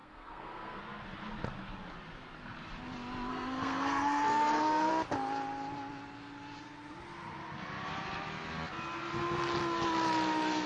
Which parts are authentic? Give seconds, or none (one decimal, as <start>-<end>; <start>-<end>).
0.8-3.3; 4.9-10.7